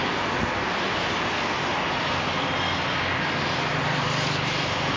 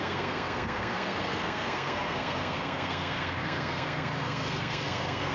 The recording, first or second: first